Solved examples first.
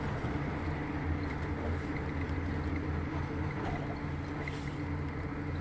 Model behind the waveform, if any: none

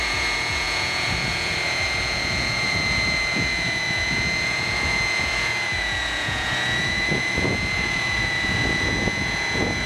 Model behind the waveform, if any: vocoder, Vocos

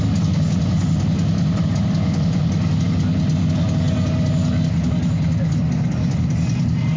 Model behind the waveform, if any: none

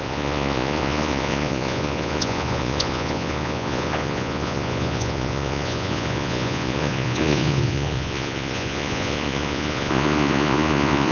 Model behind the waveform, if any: vocoder, Vocos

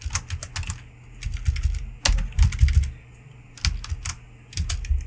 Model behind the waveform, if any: none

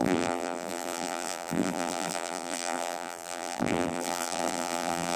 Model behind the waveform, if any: vocoder, BigVGAN v2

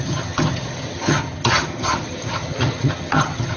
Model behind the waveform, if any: vocoder, HiFi-GAN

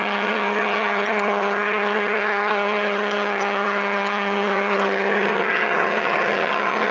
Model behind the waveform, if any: vocoder, HiFi-GAN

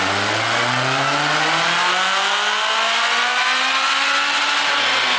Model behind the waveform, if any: none